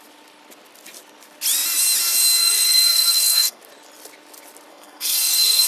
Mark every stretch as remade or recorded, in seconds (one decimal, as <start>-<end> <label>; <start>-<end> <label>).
0.0-2.4 recorded; 2.4-3.6 remade; 3.6-4.7 recorded; 4.7-5.7 remade